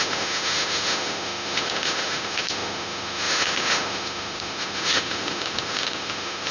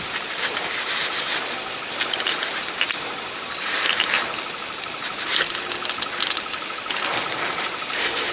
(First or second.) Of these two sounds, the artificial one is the first